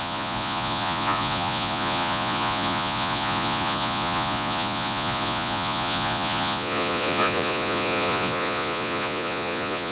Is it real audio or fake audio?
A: fake